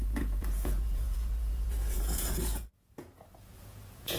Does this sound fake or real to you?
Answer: fake